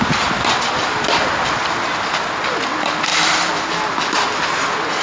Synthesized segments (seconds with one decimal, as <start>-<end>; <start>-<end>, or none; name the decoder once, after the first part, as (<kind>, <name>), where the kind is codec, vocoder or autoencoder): 3.1-3.7 (vocoder, BigVGAN v2)